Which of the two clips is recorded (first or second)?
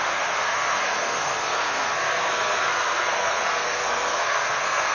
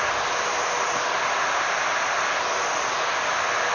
second